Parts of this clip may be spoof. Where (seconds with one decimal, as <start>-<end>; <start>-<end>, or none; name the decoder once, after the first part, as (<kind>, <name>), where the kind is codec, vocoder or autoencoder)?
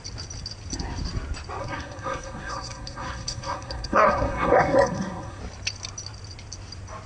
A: 1.6-5.4 (codec, SNAC)